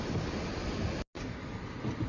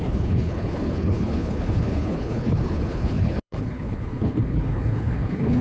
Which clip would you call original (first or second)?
first